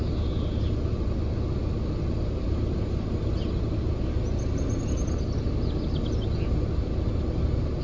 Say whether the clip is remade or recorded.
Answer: recorded